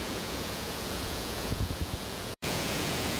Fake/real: fake